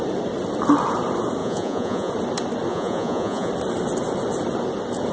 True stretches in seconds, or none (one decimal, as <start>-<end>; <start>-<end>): 0.0-1.4; 2.1-2.7; 3.5-5.1

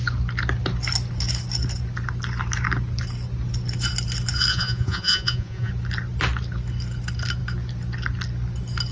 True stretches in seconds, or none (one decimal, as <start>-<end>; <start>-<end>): 0.0-4.5; 5.7-8.9

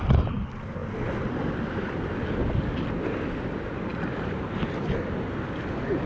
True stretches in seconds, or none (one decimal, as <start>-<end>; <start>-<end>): 0.0-6.1

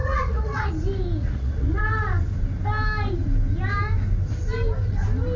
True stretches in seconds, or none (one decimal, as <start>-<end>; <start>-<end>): 0.7-1.2; 1.8-5.4